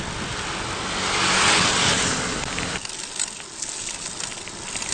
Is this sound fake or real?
real